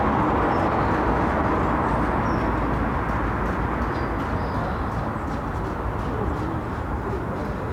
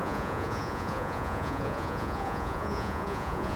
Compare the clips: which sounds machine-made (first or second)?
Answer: second